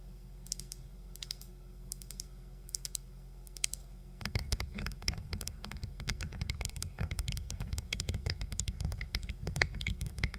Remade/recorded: remade